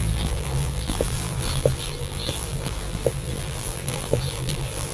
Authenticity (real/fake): fake